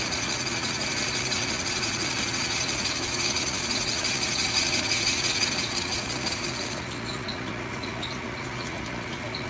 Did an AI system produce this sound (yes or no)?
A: yes